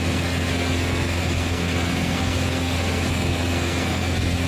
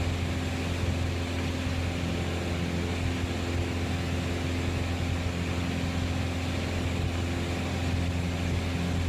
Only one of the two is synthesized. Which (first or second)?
first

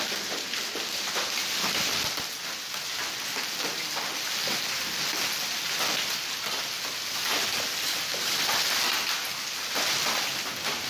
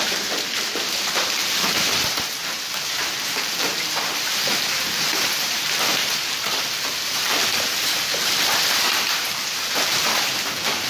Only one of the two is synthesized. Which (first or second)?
second